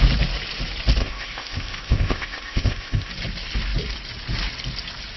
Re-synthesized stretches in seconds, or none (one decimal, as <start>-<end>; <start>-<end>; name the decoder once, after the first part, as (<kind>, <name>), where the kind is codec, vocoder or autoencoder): 1.0-3.1 (codec, ZipCodec)